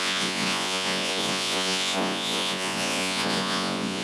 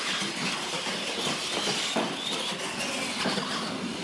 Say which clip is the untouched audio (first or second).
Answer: second